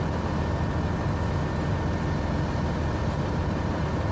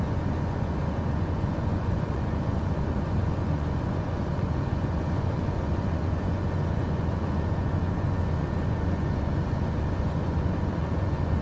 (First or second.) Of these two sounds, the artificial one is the second